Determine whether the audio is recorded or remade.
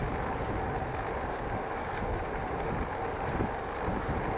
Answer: recorded